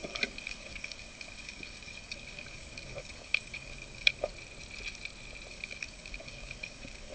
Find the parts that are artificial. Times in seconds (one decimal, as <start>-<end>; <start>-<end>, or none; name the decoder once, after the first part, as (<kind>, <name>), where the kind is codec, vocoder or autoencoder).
0.0-4.3 (codec, DAC); 5.5-7.1